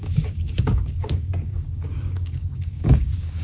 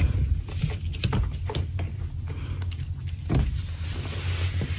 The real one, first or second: second